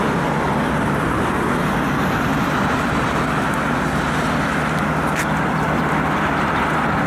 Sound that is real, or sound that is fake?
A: real